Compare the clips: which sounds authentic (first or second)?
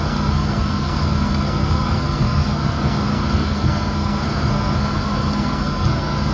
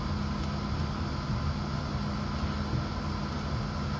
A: second